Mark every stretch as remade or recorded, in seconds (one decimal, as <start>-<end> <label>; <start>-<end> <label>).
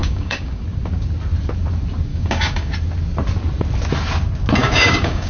0.0-0.6 remade; 0.6-2.1 recorded; 2.1-2.7 remade; 2.7-4.6 recorded; 4.6-5.3 remade